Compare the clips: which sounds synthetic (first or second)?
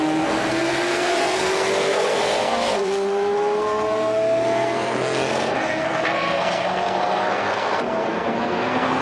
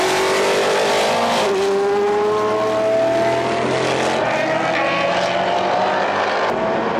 first